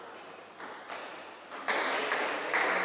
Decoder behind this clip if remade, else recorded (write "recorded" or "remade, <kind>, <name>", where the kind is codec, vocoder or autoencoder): recorded